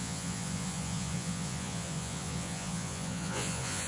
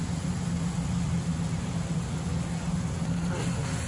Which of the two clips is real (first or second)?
second